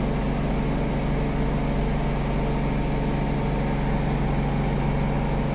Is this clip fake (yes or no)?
no